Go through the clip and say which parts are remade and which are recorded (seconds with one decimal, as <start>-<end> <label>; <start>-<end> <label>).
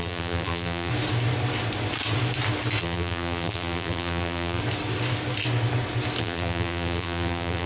0.0-0.9 remade; 0.9-2.8 recorded; 2.8-4.6 remade; 4.6-6.2 recorded; 6.2-7.7 remade